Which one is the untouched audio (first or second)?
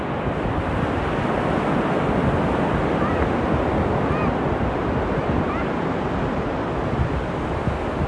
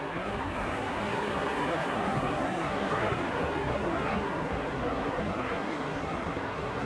first